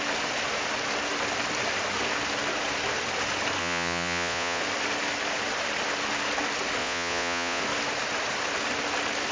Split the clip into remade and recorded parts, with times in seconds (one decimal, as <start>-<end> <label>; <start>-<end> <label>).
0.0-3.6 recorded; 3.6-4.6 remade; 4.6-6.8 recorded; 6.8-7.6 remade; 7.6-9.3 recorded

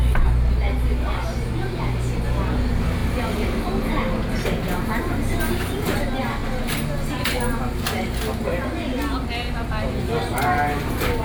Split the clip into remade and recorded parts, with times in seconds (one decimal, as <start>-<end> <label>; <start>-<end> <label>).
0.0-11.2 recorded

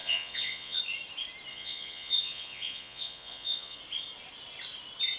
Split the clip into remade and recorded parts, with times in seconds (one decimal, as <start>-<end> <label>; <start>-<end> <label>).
0.0-0.8 remade; 0.8-1.5 recorded; 1.5-3.8 remade; 3.8-5.2 recorded

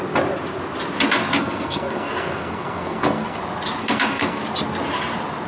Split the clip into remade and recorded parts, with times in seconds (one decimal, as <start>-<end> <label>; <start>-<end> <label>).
0.0-1.2 recorded; 1.2-3.4 remade; 3.4-3.8 recorded; 3.8-4.4 remade; 4.4-5.5 recorded

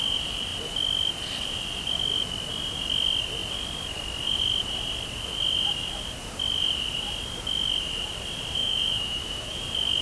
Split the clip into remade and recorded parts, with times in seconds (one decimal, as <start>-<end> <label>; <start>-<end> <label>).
0.0-8.6 recorded; 8.6-9.6 remade; 9.6-10.0 recorded

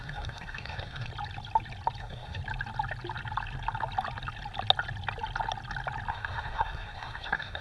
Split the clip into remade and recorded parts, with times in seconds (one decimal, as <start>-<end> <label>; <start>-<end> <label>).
0.0-1.1 remade; 1.1-2.0 recorded; 2.0-2.4 remade; 2.4-6.1 recorded; 6.1-7.6 remade